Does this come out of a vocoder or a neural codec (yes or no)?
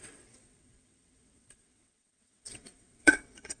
yes